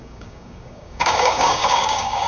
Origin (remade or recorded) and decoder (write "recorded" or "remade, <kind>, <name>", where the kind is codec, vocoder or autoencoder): remade, codec, DAC